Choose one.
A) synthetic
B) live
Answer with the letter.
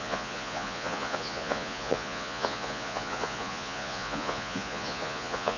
A